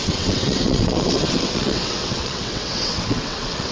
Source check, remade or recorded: remade